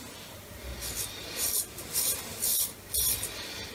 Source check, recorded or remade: recorded